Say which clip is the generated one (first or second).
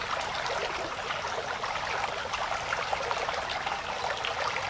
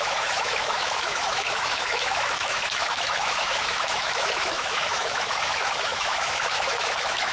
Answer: second